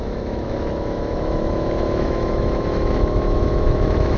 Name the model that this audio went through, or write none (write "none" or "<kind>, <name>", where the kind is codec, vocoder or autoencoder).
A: autoencoder, DAC-VAE